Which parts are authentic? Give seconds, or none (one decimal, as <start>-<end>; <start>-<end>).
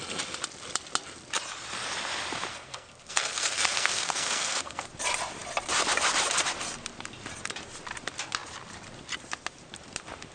0.0-2.5; 4.9-10.3